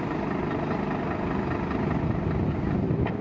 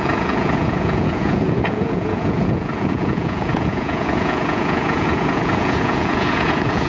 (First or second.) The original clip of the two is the first